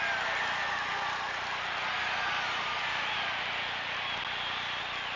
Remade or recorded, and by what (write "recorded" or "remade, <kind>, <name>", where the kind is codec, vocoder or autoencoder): recorded